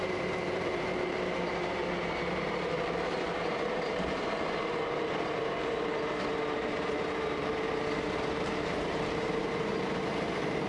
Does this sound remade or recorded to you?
remade